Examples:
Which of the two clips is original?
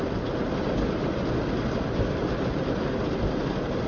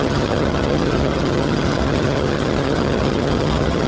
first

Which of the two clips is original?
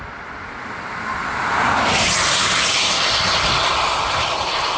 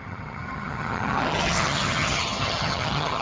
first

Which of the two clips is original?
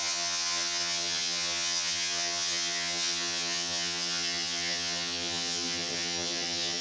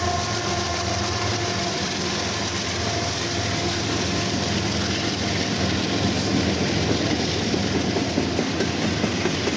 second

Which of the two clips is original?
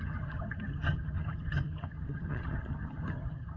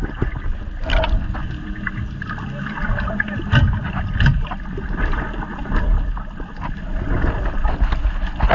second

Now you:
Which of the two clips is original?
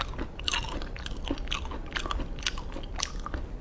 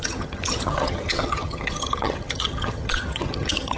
first